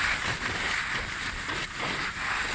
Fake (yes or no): no